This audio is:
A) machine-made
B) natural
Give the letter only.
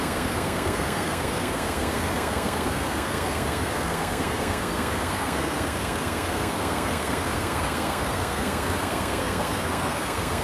A